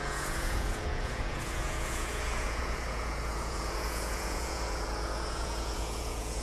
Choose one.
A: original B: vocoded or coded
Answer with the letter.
B